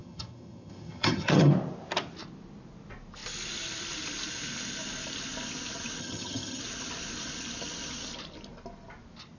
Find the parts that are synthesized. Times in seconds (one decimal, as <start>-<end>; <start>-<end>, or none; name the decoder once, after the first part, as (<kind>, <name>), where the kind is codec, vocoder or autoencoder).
0.0-1.5 (vocoder, HiFi-GAN); 6.0-6.6